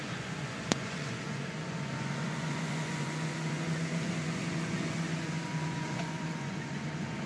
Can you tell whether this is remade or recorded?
remade